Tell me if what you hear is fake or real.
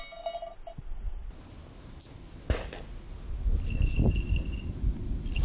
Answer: real